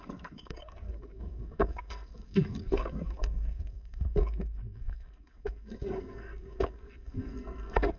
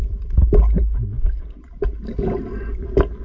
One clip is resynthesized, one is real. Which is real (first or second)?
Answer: second